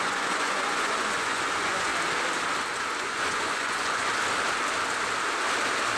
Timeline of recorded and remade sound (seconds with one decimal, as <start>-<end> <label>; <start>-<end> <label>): 0.0-1.9 remade; 1.9-3.0 recorded; 3.0-4.1 remade; 4.1-6.0 recorded